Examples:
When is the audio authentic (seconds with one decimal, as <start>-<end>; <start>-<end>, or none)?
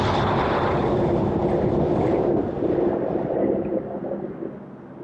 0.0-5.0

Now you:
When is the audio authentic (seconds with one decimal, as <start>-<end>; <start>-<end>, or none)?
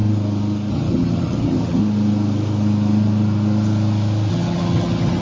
0.0-0.7; 1.8-4.3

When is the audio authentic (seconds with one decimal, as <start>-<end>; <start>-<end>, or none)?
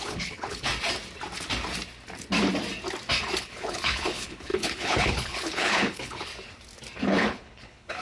0.7-3.4; 6.3-7.0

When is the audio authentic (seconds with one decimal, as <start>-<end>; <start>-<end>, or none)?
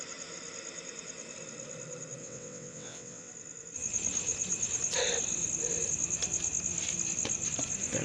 0.0-2.2; 3.3-8.0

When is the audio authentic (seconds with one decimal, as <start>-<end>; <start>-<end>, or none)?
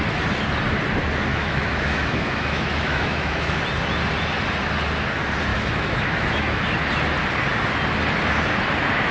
0.0-1.3; 3.6-5.5; 6.6-9.1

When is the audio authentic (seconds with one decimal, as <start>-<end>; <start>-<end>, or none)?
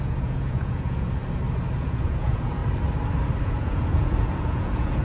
1.2-1.8; 2.6-3.4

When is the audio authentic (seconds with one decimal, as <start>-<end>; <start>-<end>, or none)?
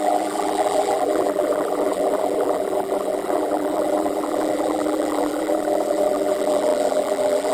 none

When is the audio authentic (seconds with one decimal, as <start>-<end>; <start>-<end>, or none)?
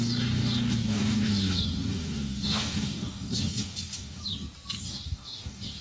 4.2-4.8